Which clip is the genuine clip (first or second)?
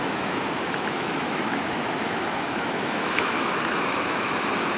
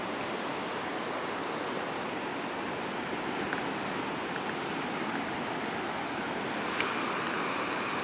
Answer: second